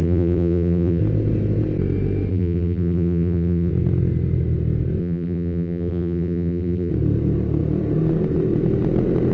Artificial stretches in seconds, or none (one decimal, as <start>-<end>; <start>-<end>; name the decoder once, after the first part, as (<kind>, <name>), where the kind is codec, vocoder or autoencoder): 0.0-1.0 (vocoder, BigVGAN v2); 2.3-3.7; 5.0-6.9